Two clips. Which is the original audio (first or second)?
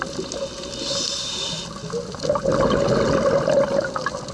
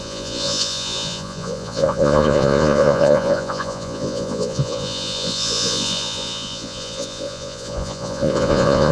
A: first